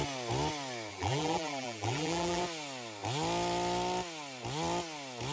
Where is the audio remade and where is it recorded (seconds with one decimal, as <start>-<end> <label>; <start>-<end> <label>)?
0.0-0.9 recorded; 0.9-2.4 remade; 2.4-5.3 recorded